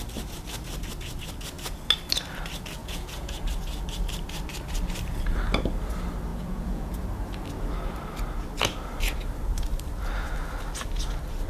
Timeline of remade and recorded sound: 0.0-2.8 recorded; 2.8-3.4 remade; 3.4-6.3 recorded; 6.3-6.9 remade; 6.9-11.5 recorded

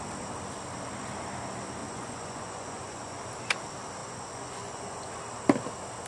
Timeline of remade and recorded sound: 0.0-1.8 recorded; 1.8-3.2 remade; 3.2-4.0 recorded; 4.0-5.1 remade; 5.1-6.1 recorded

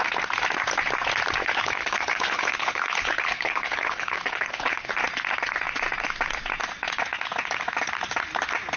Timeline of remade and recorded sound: 0.0-1.4 recorded; 1.4-4.9 remade; 4.9-8.8 recorded

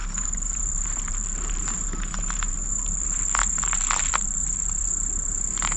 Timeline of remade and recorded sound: 0.0-5.8 remade

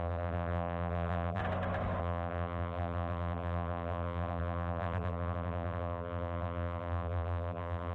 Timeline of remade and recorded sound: 0.0-1.4 remade; 1.4-2.0 recorded; 2.0-7.9 remade

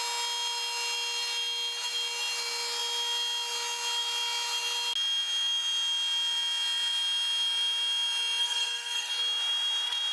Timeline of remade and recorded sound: 0.0-8.4 recorded; 8.4-9.1 remade; 9.1-10.1 recorded

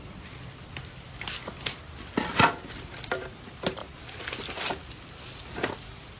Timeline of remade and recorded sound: 0.0-6.2 recorded

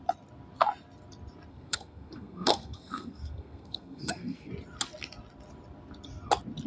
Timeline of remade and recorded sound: 0.0-1.5 recorded; 1.5-4.5 remade; 4.5-6.7 recorded